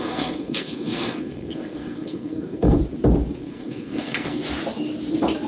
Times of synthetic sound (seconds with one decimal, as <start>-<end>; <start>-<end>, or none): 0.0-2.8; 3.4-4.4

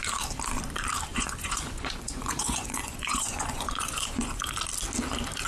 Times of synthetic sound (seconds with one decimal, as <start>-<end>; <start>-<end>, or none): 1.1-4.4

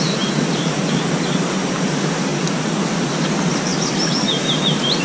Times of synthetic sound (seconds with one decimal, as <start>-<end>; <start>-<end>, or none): 0.0-0.8; 1.8-3.7

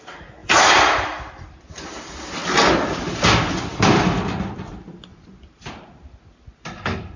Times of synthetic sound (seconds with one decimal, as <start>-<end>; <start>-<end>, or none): 0.4-2.1; 3.7-4.7